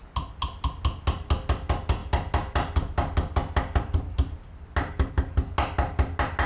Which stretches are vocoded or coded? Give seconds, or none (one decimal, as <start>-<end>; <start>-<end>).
none